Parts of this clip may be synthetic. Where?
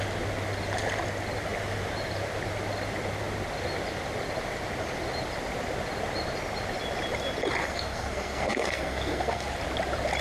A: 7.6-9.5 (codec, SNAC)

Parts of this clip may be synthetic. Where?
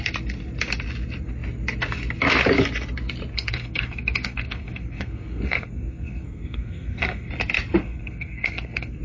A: 3.3-7.3 (codec, SNAC); 7.8-9.0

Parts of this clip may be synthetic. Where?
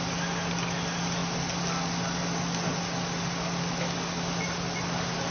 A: none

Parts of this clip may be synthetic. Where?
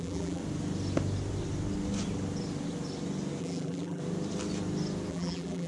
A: 0.0-0.4 (vocoder, BigVGAN v2); 3.4-4.0; 5.1-5.7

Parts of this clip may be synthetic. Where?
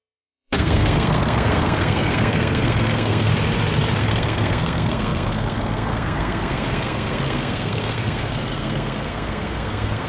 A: 0.0-3.3 (codec, SNAC); 4.0-10.1